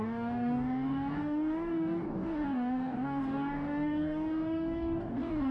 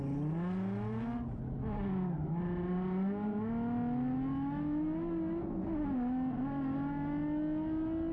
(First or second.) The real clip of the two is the second